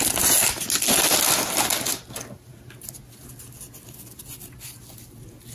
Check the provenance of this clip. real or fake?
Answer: real